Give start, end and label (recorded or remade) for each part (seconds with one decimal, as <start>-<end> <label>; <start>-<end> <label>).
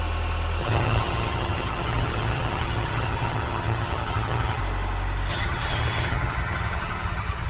0.0-0.6 recorded; 0.6-4.6 remade; 4.6-5.3 recorded; 5.3-7.5 remade